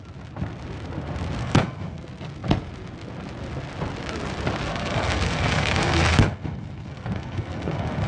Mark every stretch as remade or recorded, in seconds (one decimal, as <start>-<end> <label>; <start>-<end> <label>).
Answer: 0.0-1.4 recorded; 1.4-2.0 remade; 2.0-4.7 recorded; 4.7-8.1 remade